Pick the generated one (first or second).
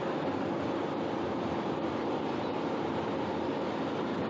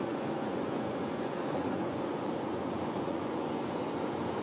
second